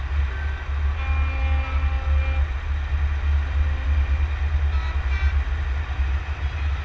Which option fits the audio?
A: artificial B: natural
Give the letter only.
B